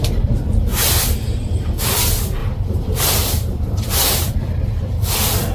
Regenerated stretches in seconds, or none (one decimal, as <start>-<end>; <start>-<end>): 2.4-4.4